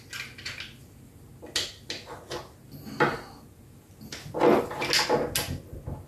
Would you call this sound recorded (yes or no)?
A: yes